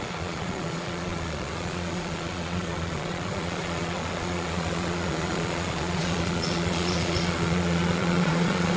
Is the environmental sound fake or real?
fake